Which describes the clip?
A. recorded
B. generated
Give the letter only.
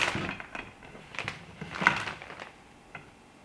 A